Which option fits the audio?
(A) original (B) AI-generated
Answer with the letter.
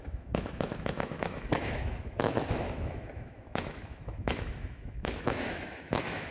B